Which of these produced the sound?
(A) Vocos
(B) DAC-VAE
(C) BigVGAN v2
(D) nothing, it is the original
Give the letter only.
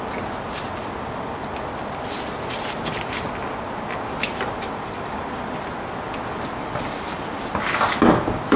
D